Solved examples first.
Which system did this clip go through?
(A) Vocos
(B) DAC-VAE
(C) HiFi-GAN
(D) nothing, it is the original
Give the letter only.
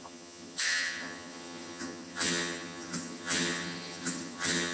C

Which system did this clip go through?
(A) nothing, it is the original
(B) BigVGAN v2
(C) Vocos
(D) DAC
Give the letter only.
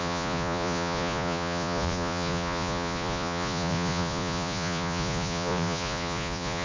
C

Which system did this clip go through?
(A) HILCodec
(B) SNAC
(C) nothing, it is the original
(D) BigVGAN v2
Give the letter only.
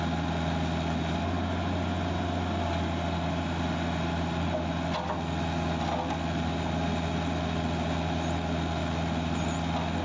C